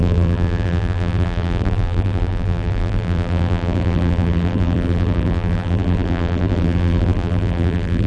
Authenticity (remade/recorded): remade